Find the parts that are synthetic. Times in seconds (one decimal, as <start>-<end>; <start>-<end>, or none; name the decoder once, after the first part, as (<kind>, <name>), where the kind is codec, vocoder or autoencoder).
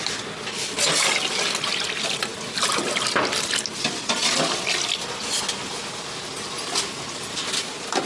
none